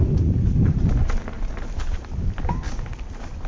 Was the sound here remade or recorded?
recorded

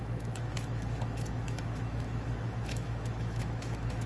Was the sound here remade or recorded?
remade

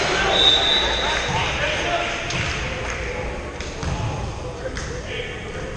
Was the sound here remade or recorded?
recorded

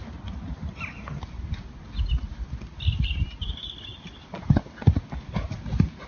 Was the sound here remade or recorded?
recorded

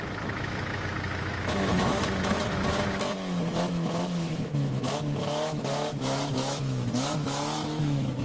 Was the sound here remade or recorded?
remade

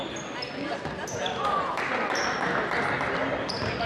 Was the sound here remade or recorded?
recorded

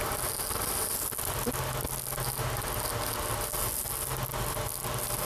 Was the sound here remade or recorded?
recorded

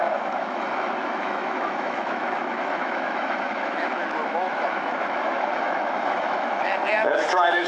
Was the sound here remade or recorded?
remade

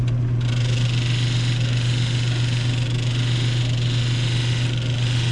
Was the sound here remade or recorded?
recorded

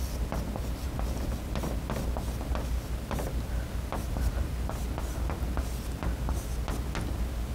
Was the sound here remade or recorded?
recorded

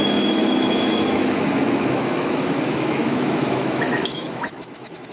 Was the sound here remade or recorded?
remade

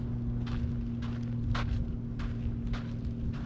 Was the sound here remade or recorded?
recorded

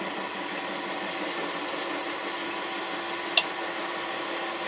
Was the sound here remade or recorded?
recorded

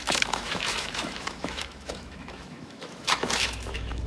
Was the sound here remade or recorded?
remade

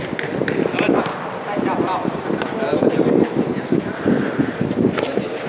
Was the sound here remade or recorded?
recorded